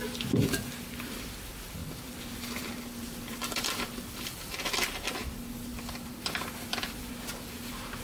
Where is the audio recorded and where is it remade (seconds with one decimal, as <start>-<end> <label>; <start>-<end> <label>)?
0.0-1.8 recorded; 1.8-5.3 remade; 5.3-5.7 recorded; 5.7-7.0 remade; 7.0-8.0 recorded